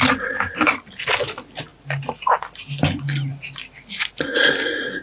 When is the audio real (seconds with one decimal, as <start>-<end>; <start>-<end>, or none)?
0.0-5.0